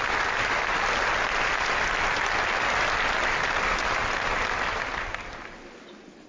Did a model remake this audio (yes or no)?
no